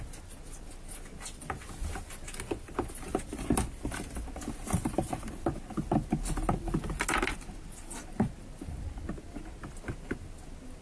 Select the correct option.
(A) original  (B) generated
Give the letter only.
A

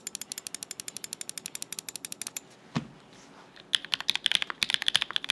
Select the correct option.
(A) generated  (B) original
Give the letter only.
B